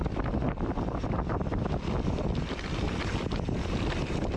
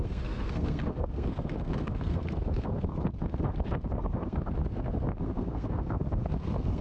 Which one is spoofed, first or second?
second